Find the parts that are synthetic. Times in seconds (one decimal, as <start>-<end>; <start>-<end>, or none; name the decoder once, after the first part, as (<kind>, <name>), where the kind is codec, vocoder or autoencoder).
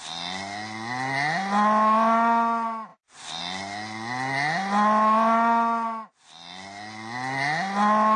2.9-3.4 (vocoder, BigVGAN v2)